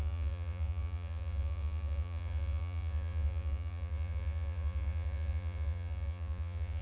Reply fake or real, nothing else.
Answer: fake